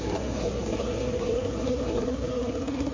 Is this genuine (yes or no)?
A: no